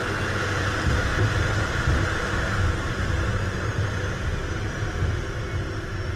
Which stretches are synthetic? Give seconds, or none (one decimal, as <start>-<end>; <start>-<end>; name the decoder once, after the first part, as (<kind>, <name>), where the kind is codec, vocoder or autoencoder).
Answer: none